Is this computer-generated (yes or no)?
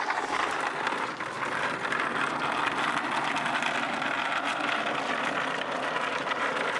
no